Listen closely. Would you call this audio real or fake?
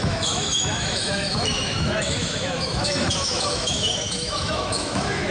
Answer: fake